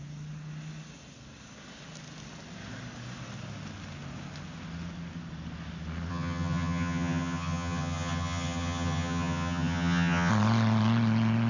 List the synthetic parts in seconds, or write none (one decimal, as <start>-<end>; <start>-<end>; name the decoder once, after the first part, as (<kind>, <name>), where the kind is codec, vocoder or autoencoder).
6.1-10.3 (vocoder, HiFi-GAN)